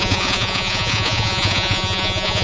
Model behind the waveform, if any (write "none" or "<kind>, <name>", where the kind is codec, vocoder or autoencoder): vocoder, Vocos